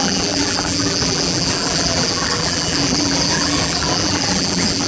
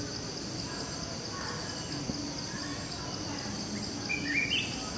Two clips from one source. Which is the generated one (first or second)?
first